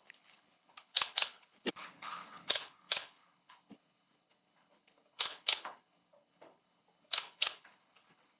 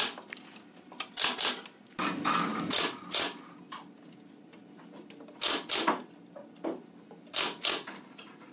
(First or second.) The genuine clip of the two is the second